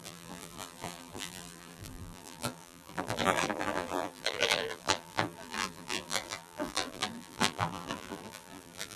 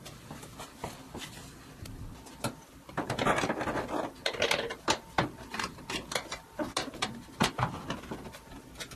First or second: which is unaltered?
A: second